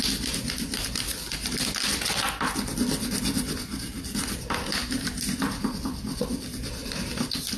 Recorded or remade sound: recorded